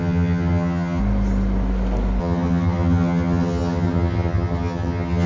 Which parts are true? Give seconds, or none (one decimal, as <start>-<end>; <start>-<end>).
1.0-2.2